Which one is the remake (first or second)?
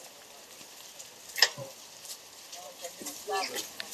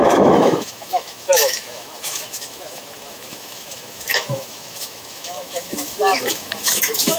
second